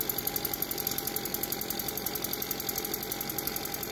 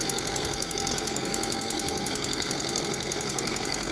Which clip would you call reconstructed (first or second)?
second